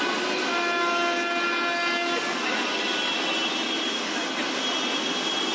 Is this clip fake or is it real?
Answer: real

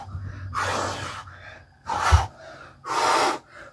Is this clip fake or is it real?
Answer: real